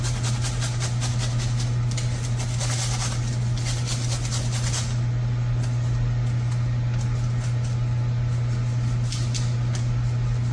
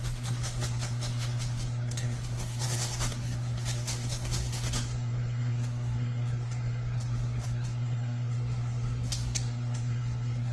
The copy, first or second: second